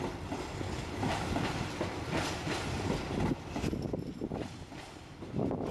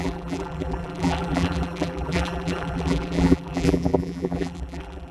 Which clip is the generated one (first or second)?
second